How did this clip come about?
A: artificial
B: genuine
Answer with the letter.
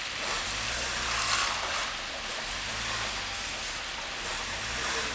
B